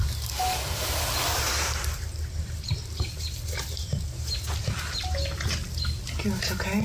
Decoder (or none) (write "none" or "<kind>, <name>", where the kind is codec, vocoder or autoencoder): none